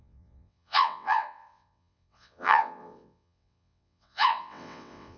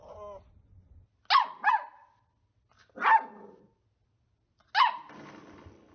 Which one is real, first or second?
second